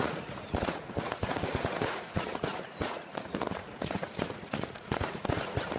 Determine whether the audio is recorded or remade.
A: remade